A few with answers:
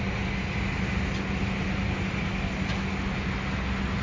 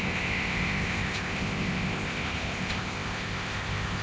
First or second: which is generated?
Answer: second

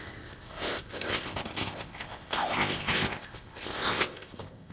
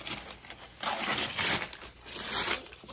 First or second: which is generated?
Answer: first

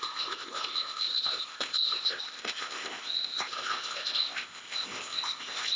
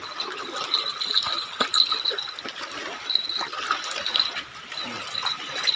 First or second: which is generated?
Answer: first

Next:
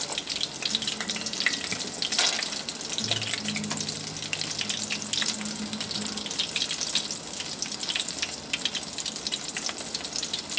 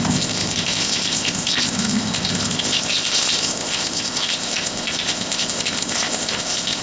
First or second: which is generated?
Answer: second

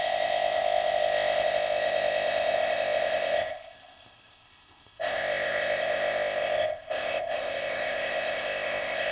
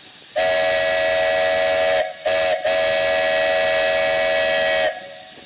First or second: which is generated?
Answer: first